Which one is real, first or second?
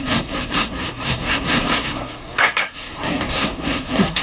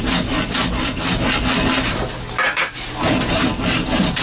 second